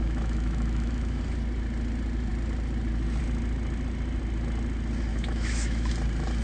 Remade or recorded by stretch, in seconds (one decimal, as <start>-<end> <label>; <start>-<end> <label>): 0.0-1.2 remade; 1.2-5.1 recorded; 5.1-5.9 remade; 5.9-6.4 recorded